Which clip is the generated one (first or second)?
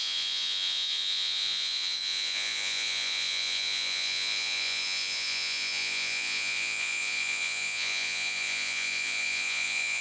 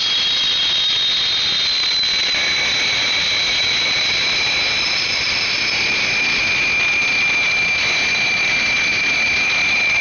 first